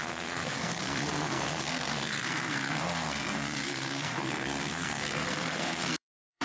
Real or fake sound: fake